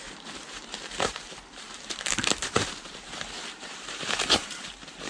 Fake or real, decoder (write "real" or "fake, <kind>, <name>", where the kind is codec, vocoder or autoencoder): fake, vocoder, BigVGAN v2